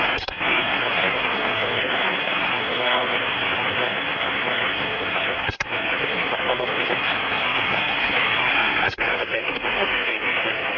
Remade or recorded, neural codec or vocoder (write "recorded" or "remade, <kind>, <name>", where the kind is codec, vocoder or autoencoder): remade, codec, SNAC